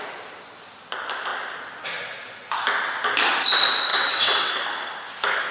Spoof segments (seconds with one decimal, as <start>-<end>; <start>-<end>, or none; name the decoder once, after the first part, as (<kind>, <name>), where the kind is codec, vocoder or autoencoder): 3.9-4.5 (vocoder, WaveNeXt)